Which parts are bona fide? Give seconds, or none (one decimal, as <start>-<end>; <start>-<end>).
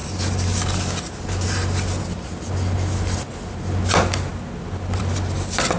0.0-5.8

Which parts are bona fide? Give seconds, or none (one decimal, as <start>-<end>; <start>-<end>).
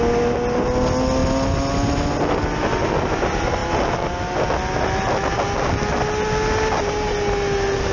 0.0-7.9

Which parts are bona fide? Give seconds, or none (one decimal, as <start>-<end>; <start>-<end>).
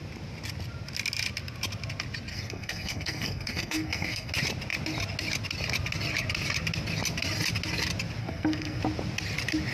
0.0-2.3; 4.3-8.2; 8.8-9.7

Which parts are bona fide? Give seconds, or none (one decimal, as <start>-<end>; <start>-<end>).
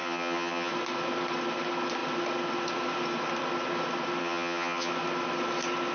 0.7-4.2; 4.9-5.9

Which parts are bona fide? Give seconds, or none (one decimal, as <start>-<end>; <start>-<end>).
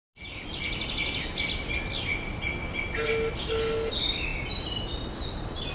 0.0-5.7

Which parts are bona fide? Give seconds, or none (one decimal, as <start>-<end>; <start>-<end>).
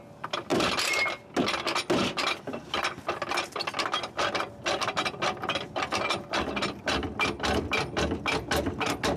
0.0-9.2